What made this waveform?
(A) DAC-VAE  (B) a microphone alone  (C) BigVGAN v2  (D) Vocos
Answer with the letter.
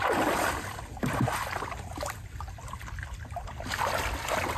B